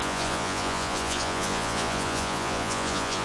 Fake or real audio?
fake